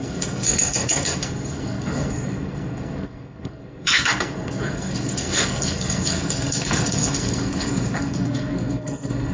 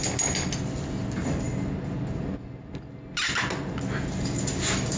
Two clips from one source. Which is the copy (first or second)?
first